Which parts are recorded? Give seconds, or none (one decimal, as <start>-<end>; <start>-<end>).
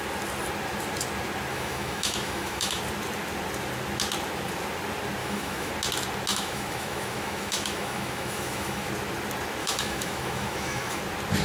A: 0.0-1.5; 2.8-5.2; 5.7-6.3; 8.9-9.6; 11.0-11.4